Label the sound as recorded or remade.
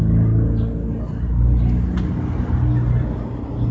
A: recorded